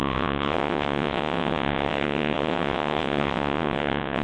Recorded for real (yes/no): no